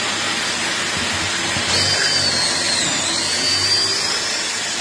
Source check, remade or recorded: recorded